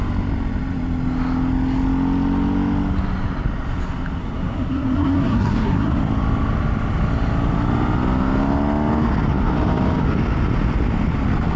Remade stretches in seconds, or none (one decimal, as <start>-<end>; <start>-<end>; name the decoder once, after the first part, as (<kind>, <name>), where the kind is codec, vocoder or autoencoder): 4.2-6.0 (codec, SNAC)

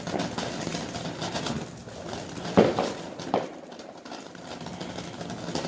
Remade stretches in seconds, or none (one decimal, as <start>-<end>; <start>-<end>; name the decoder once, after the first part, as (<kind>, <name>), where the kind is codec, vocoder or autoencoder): 1.8-5.2 (vocoder, BigVGAN v2)

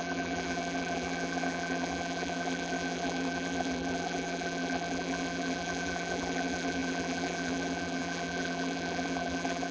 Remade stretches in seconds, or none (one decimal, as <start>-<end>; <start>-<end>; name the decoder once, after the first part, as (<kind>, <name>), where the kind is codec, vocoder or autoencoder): 0.0-9.7 (vocoder, BigVGAN v2)

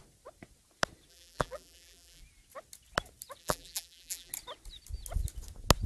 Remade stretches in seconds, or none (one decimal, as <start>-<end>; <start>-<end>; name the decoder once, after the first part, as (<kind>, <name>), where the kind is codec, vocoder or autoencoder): 1.1-2.2 (vocoder, BigVGAN v2); 3.4-4.3

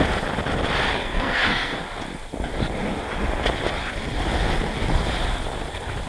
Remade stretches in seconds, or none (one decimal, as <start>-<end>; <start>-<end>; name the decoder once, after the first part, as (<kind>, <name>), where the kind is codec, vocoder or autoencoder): 1.0-1.8 (codec, SNAC)

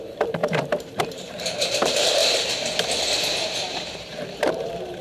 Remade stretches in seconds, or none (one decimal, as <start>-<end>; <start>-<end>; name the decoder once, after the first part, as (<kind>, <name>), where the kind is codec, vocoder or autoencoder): 0.0-2.2 (vocoder, BigVGAN v2); 3.7-5.0